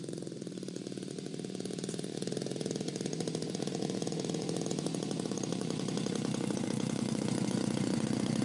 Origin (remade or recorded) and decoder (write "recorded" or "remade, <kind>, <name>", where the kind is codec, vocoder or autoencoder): remade, vocoder, Vocos